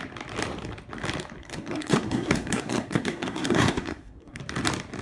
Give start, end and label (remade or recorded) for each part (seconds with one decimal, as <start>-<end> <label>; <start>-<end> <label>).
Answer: 0.0-1.4 recorded; 1.4-4.4 remade; 4.4-5.0 recorded